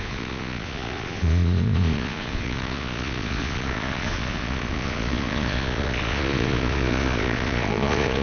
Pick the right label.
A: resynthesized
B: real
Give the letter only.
A